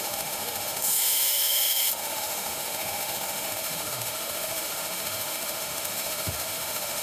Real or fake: fake